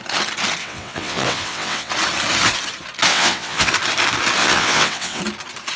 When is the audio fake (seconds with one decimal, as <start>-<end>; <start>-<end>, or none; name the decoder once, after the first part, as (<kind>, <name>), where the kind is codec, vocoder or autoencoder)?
0.6-1.9 (vocoder, WaveNeXt); 3.1-3.7; 4.4-5.2